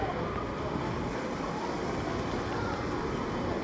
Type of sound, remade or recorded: recorded